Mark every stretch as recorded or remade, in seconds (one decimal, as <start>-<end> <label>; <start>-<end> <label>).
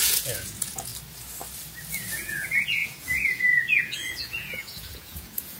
0.0-0.9 remade; 0.9-2.1 recorded; 2.1-5.6 remade